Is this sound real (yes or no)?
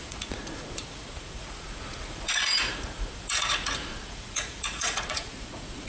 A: no